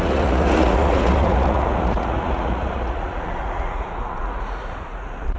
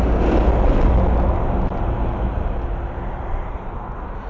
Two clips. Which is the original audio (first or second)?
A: second